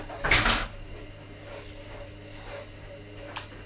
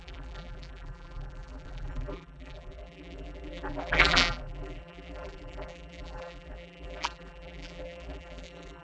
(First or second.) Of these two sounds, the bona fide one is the first